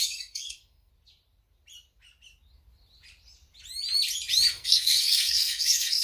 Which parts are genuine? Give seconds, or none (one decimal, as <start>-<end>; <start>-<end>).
0.9-4.5